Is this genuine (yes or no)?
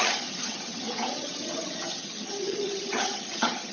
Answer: no